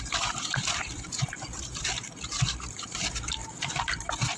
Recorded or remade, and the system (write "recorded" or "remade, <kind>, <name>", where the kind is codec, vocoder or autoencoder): remade, vocoder, BigVGAN v2